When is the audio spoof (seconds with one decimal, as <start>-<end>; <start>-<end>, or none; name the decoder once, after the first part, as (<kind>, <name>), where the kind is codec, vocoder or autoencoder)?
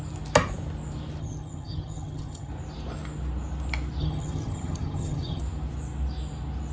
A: 1.2-2.5 (vocoder, HiFi-GAN); 4.0-5.4